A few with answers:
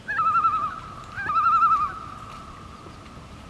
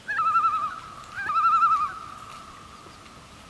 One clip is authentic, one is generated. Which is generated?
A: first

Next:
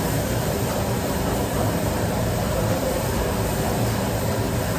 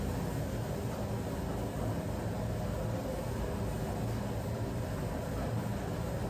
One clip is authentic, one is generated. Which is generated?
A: first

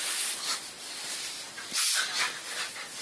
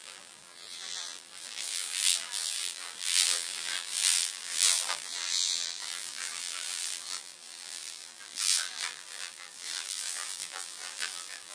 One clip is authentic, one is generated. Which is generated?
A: second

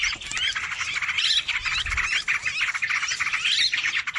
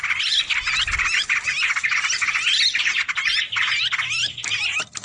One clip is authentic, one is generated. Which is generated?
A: first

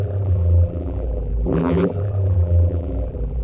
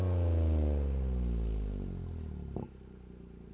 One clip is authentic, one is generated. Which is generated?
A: first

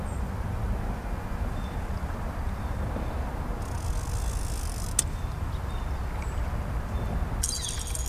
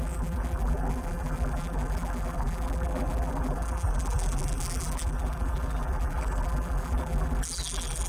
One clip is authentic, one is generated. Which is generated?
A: second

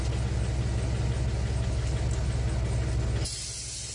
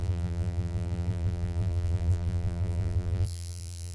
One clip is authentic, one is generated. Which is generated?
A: second